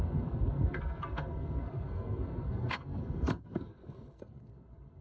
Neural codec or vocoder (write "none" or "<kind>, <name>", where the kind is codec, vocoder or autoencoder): codec, SNAC